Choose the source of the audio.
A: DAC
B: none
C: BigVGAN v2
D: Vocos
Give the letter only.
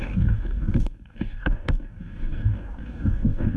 A